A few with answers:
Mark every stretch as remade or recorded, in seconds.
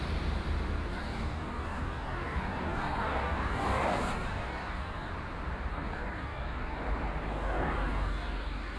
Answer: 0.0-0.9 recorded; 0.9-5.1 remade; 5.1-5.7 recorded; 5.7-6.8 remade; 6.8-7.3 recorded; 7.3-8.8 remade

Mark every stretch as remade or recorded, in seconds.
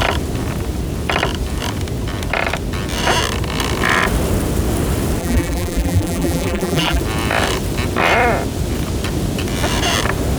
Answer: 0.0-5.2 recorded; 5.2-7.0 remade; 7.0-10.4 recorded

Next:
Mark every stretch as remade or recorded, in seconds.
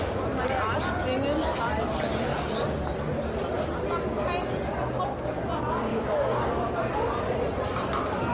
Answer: 0.0-5.9 recorded; 5.9-6.7 remade; 6.7-8.3 recorded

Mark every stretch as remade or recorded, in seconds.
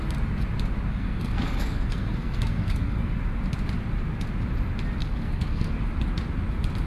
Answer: 0.0-0.9 recorded; 0.9-3.2 remade; 3.2-5.0 recorded; 5.0-5.7 remade; 5.7-6.9 recorded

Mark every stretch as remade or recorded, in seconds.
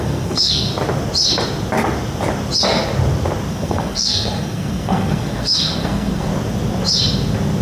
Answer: 0.0-0.7 remade; 0.7-3.5 recorded; 3.5-6.3 remade; 6.3-7.6 recorded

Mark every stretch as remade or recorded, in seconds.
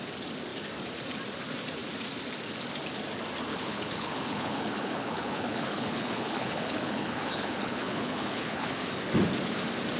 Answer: 0.0-3.5 recorded; 3.5-8.7 remade; 8.7-10.0 recorded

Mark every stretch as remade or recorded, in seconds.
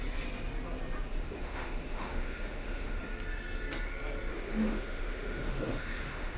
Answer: 0.0-1.2 recorded; 1.2-3.0 remade; 3.0-4.3 recorded; 4.3-6.4 remade